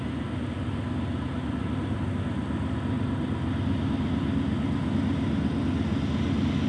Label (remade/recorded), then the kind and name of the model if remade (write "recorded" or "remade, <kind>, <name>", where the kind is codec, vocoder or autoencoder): recorded